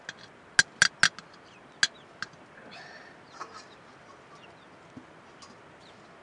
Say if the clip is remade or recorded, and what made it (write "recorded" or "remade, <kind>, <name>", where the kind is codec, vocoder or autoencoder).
recorded